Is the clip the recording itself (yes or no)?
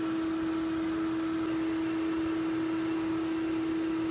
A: yes